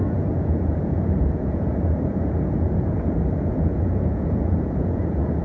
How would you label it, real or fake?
fake